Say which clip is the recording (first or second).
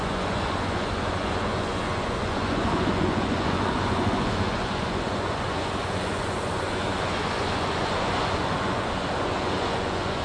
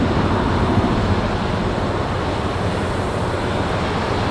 second